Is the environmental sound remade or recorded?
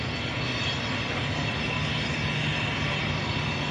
recorded